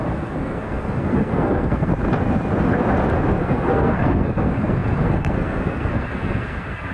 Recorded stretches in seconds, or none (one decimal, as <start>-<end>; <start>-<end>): 1.9-3.4

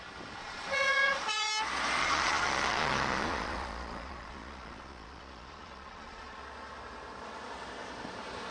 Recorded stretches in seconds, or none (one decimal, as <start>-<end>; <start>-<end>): 0.0-0.4; 1.5-2.0; 6.4-8.5